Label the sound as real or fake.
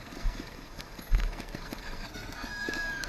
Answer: fake